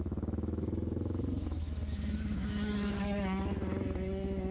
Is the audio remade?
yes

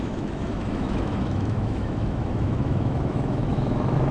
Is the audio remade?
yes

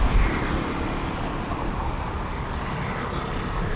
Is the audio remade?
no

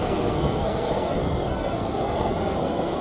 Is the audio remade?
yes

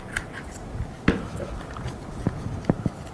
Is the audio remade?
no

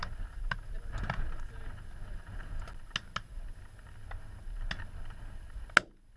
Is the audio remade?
no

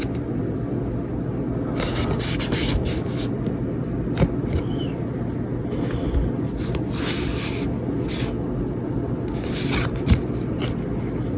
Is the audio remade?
no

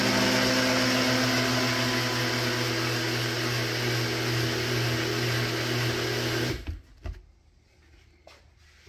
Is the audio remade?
no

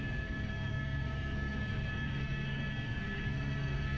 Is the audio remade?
yes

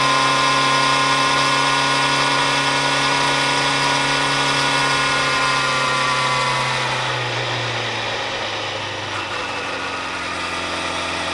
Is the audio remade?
no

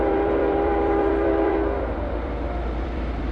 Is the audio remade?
yes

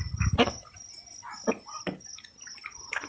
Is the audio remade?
no